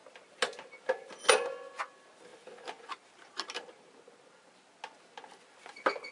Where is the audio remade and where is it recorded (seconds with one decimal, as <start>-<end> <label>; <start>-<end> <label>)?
0.0-6.1 recorded